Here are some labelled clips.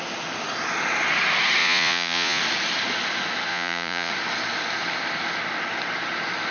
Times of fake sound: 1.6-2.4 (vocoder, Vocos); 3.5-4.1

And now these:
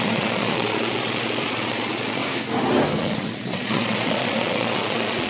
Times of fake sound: 0.0-2.2 (vocoder, Vocos); 3.0-5.3

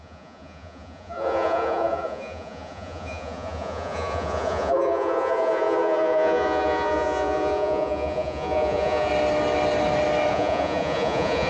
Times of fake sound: 0.0-9.1 (vocoder, Vocos); 10.3-11.5

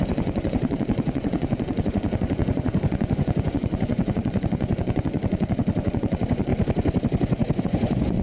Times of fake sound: 0.0-6.5 (vocoder, Vocos); 7.6-8.2

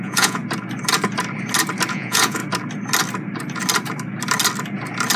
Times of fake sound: 0.0-0.4 (vocoder, Vocos); 1.9-2.4